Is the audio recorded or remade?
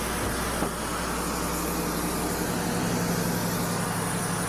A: recorded